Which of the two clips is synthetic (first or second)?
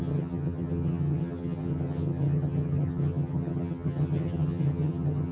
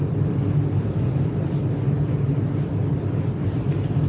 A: first